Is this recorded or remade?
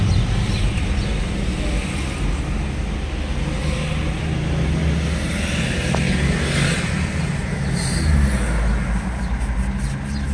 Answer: recorded